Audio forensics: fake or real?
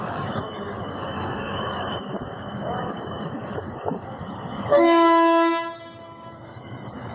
fake